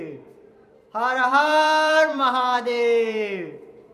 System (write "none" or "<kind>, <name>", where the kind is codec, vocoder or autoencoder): vocoder, BigVGAN v2